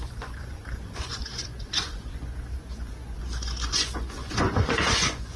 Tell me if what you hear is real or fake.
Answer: fake